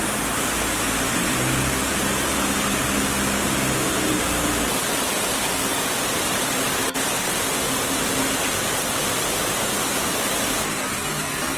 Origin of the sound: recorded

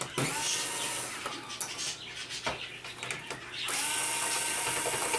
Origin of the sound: recorded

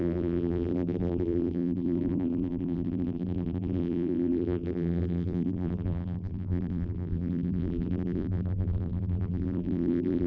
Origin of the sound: remade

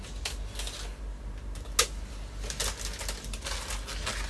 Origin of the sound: recorded